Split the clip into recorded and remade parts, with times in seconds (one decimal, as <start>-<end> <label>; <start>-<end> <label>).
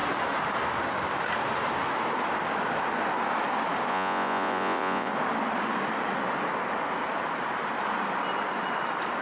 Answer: 0.0-3.9 recorded; 3.9-5.1 remade; 5.1-9.2 recorded